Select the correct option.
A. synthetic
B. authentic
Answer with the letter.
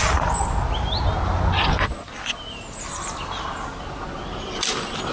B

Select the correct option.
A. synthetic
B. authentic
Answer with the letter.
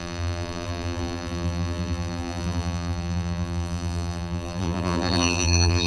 A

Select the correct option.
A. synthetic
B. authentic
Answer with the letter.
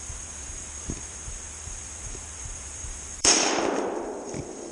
A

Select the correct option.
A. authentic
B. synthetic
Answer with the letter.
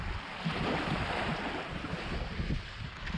A